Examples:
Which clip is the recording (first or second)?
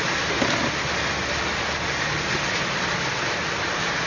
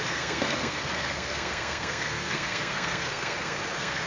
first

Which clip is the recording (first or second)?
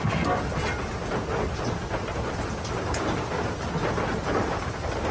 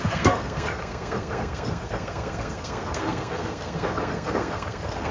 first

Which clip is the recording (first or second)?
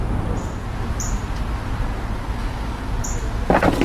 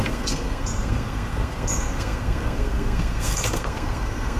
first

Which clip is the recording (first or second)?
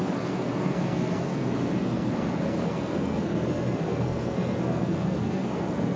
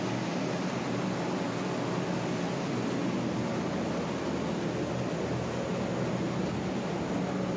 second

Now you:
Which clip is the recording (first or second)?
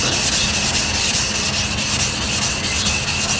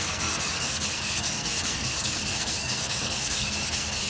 first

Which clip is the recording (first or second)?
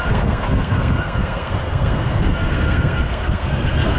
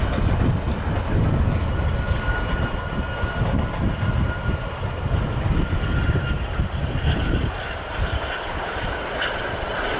second